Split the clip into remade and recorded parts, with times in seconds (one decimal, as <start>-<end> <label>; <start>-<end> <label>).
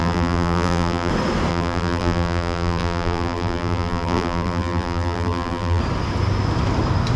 0.0-1.1 remade; 1.1-1.5 recorded; 1.5-5.8 remade; 5.8-7.2 recorded